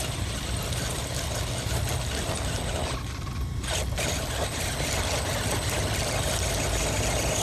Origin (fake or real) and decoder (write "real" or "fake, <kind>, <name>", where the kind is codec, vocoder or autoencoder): real